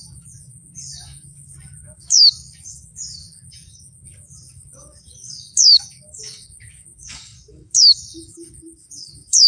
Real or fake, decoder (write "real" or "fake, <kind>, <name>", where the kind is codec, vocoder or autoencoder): fake, codec, DAC